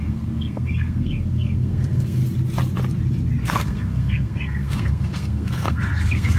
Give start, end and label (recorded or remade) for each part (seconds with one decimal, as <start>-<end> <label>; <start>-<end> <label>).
0.0-2.2 remade; 2.2-3.4 recorded; 3.4-6.4 remade